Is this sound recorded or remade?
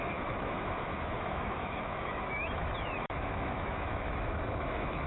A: remade